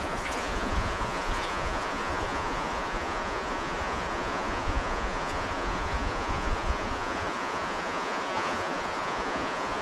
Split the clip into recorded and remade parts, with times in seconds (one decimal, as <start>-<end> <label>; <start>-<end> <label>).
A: 0.0-9.8 remade